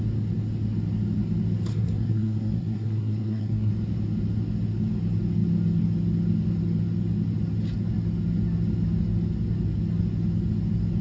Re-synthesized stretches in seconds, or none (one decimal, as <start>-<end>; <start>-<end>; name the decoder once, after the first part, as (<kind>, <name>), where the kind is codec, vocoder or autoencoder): 1.7-3.7 (codec, SNAC)